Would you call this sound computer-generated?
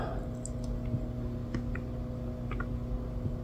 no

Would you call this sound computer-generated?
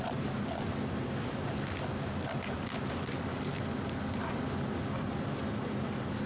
no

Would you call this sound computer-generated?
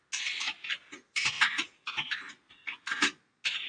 no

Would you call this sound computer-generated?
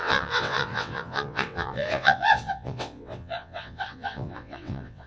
yes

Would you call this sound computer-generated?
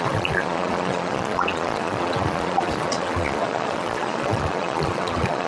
yes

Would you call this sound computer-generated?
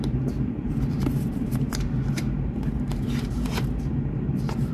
yes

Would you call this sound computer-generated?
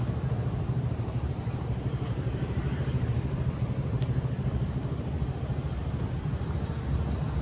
yes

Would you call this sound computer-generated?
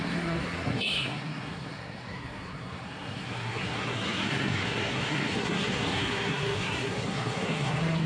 yes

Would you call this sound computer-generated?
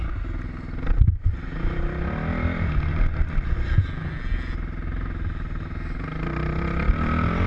no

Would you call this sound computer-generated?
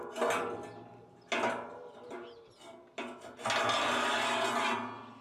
no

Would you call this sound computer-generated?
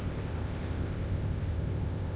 yes